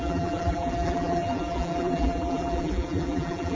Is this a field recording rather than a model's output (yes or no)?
no